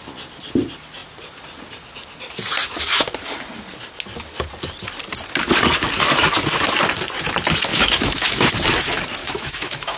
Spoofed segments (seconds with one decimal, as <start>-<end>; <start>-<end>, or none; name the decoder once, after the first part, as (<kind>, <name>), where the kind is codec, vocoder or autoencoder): 7.7-8.5 (autoencoder, DAC-VAE); 9.2-10.0